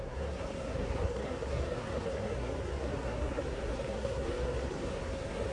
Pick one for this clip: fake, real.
fake